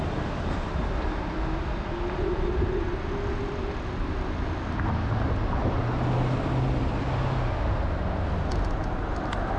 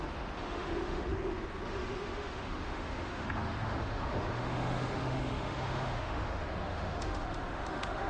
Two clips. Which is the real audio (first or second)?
first